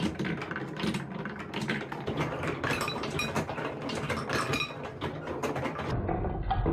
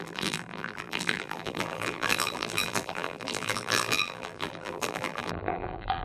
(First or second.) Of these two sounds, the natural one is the first